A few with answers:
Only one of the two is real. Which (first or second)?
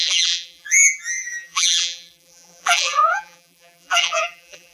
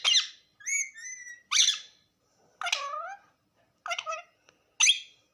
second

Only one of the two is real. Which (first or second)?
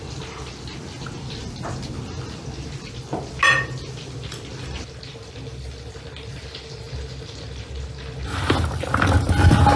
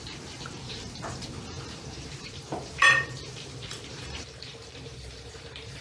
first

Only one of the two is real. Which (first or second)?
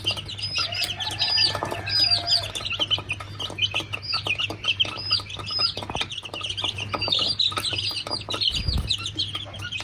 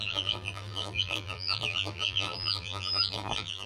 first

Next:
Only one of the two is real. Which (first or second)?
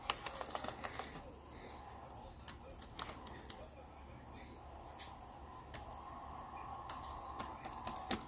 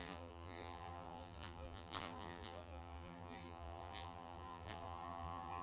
first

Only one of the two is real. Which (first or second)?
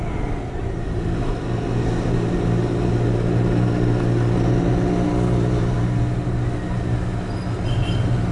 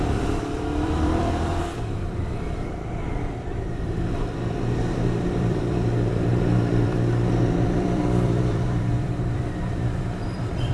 first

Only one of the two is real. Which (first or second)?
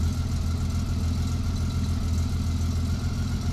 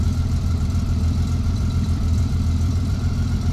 first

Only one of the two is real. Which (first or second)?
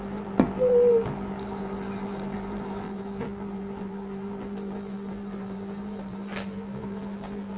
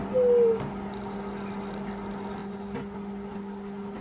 second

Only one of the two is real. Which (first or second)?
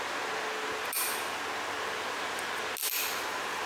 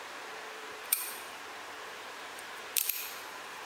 first